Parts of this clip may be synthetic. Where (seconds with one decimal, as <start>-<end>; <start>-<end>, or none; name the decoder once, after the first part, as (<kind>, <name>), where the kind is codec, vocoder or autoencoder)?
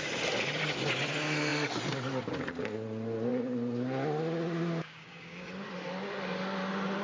4.8-5.5 (codec, DAC)